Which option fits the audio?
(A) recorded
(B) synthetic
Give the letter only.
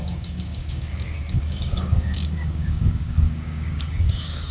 B